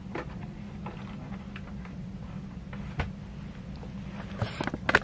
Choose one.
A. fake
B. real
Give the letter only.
B